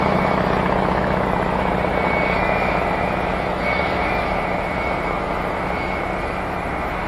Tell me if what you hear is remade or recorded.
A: remade